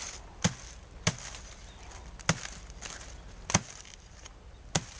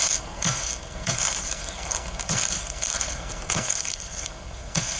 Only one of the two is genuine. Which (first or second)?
first